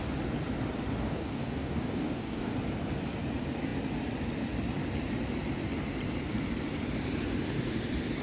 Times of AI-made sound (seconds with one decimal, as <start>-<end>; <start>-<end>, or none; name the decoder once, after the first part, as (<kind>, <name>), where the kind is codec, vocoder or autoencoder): 1.0-2.5 (codec, DAC)